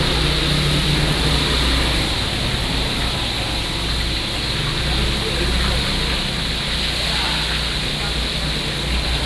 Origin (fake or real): real